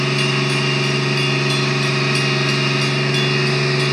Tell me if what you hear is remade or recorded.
recorded